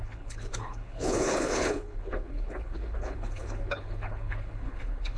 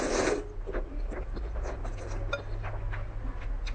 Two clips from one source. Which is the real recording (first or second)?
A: second